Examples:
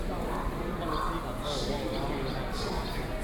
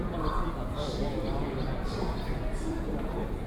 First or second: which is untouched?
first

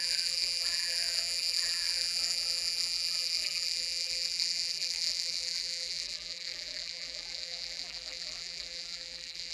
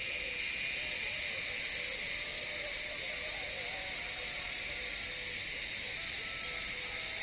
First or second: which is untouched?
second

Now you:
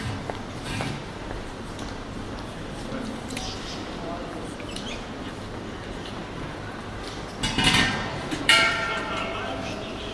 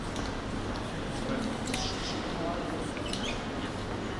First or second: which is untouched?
second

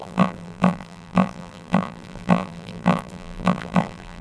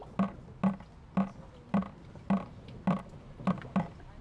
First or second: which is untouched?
second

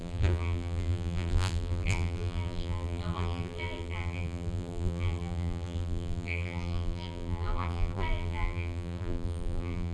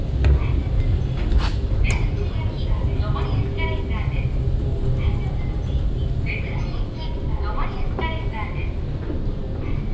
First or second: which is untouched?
second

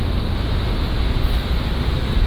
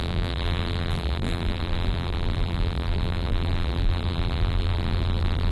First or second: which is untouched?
first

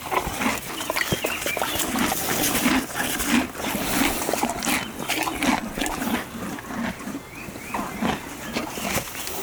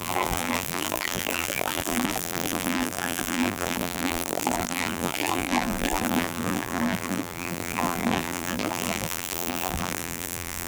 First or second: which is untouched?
first